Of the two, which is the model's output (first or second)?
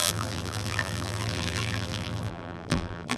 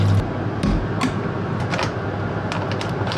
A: first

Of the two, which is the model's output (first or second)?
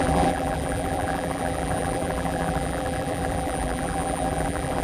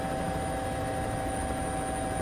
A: first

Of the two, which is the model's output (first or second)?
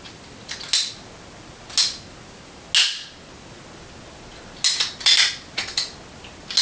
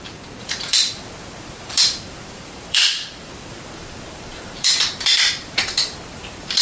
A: second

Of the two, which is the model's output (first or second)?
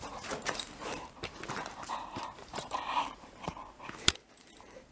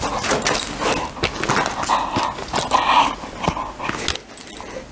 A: first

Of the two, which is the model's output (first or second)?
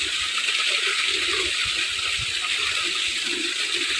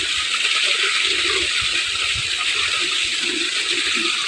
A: first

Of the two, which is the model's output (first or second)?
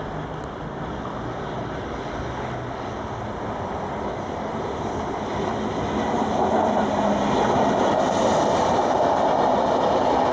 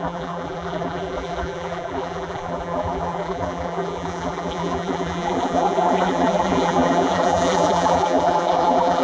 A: second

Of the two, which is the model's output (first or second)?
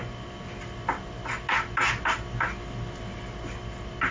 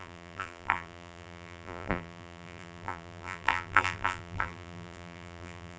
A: second